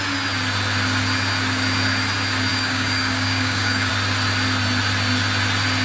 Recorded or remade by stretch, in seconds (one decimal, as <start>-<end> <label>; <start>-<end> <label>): 0.0-2.5 recorded; 2.5-3.9 remade; 3.9-5.8 recorded